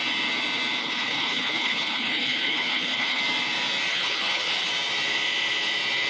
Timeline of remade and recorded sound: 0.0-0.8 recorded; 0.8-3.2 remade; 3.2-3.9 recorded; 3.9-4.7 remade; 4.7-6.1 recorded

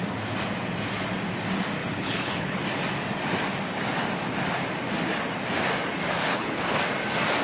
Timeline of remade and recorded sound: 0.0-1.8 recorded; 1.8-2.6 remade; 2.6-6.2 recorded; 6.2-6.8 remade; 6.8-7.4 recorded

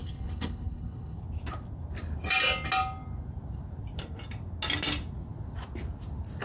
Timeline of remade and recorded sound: 0.0-1.2 remade; 1.2-6.4 recorded